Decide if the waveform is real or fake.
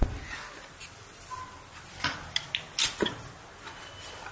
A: real